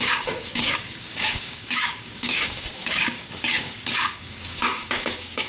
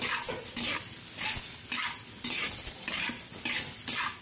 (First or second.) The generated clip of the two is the first